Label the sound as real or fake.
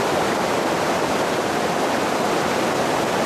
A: real